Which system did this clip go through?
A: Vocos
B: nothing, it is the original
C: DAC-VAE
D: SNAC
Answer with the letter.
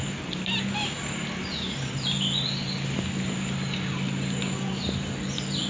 B